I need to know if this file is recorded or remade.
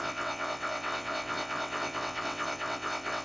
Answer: remade